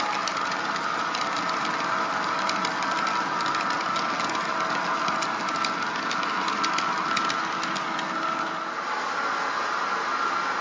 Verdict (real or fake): real